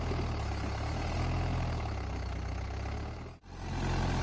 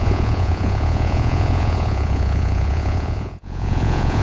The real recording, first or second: first